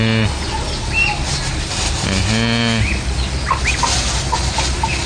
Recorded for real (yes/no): yes